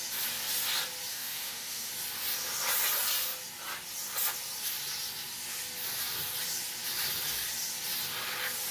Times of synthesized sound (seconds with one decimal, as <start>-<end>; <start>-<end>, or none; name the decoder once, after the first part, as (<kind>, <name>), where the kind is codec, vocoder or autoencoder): 1.1-1.9 (autoencoder, DAC-VAE)